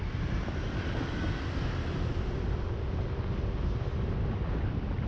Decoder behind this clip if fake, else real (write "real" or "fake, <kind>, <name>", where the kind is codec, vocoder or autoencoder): real